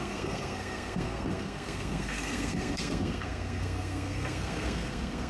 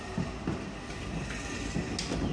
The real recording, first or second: second